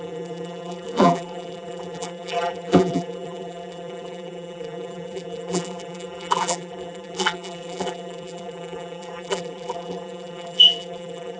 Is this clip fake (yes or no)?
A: yes